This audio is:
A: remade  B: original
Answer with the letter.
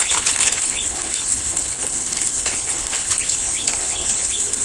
A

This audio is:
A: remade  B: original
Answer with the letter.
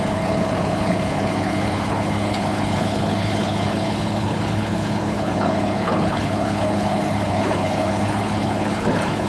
A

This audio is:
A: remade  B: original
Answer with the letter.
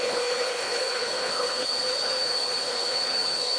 A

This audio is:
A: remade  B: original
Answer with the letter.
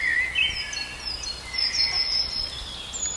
B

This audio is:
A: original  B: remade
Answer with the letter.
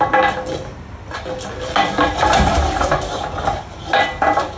A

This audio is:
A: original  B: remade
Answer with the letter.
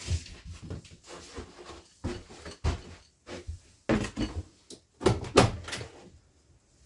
A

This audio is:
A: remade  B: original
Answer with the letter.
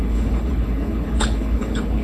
A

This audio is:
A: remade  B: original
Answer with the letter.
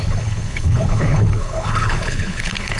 A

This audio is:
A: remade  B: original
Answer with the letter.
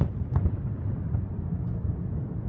B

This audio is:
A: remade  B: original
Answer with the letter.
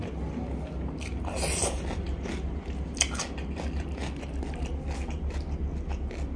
B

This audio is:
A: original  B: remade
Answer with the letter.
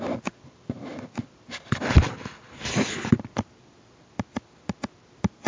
A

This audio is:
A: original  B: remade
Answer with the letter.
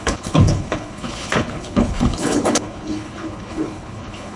B